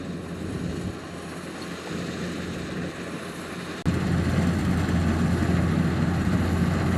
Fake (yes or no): no